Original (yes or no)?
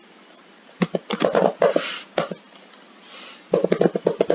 yes